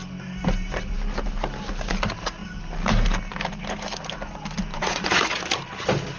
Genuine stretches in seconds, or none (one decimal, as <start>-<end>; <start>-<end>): 0.0-4.7; 5.4-6.2